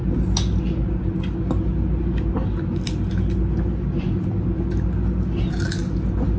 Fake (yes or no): no